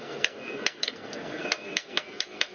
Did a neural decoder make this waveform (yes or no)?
yes